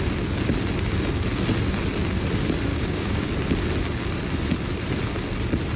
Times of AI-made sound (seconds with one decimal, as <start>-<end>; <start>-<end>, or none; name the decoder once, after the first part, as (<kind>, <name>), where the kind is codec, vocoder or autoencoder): 2.7-3.3 (codec, DAC)